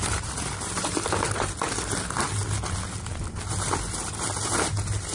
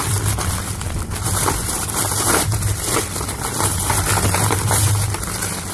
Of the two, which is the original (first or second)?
first